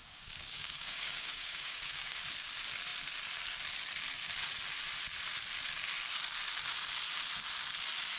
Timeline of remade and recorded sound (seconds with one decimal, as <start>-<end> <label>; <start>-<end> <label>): 0.0-2.2 remade; 2.2-8.2 recorded